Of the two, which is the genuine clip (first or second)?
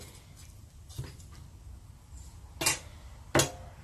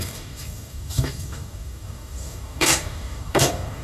first